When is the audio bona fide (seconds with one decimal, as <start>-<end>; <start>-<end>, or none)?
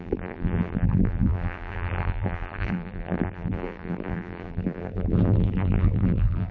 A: none